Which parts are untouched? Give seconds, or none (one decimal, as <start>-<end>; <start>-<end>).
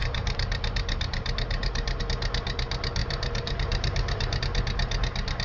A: 2.0-3.0; 4.4-5.4